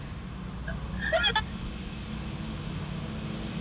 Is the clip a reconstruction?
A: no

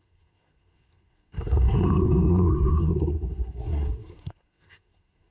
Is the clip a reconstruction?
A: yes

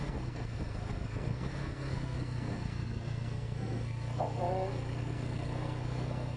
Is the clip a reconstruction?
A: yes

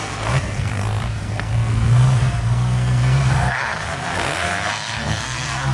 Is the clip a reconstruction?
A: yes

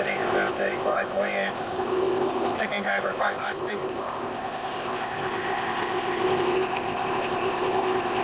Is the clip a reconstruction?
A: yes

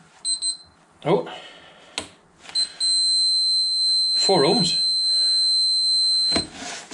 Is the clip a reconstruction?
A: no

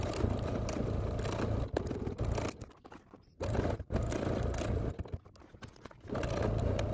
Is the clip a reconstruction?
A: no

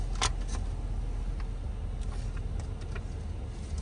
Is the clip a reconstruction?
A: no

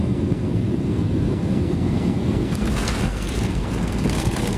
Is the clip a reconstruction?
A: yes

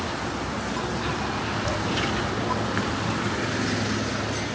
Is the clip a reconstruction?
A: no